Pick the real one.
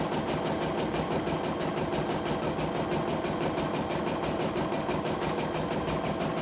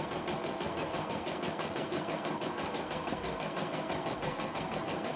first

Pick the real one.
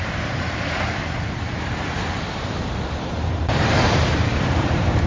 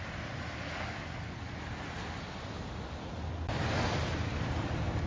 second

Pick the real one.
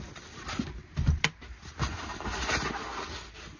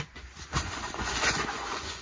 first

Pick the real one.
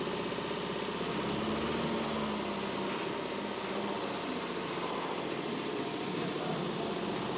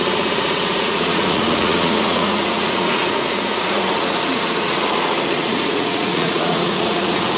first